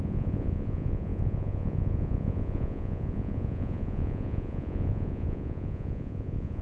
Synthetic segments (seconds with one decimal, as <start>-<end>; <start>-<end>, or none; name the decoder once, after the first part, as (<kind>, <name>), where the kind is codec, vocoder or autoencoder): 0.0-6.6 (vocoder, Vocos)